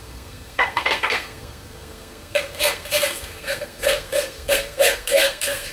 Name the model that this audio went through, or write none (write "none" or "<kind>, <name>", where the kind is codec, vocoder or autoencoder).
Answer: codec, SNAC